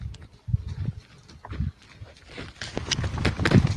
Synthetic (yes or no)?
no